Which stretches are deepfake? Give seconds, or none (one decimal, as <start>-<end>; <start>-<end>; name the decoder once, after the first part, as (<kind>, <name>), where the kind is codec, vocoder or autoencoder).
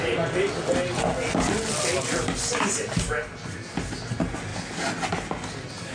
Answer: none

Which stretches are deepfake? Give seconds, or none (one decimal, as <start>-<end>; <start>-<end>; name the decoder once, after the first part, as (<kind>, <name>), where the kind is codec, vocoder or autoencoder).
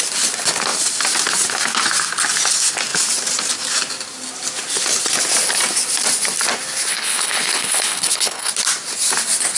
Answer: 6.9-8.5 (codec, HILCodec)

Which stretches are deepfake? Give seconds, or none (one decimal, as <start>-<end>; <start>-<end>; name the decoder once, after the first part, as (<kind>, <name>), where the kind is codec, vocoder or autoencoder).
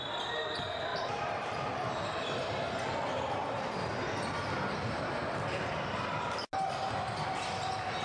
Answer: none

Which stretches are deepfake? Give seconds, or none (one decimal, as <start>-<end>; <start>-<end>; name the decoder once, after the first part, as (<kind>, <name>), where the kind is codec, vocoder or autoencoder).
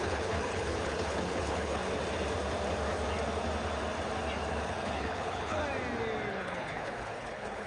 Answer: 0.0-1.8 (codec, HILCodec); 4.5-5.6; 6.3-7.7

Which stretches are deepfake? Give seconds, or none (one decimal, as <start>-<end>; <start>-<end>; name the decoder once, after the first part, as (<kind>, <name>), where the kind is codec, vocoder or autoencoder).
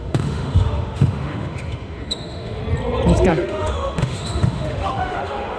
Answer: 0.0-2.6 (autoencoder, DAC-VAE); 3.3-5.6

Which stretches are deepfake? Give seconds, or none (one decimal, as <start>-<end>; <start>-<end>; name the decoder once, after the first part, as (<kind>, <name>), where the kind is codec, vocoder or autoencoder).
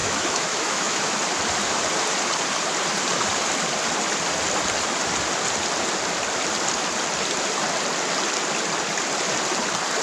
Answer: 0.0-1.2 (autoencoder, DAC-VAE)